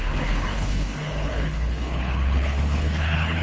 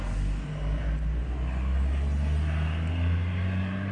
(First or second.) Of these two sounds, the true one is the second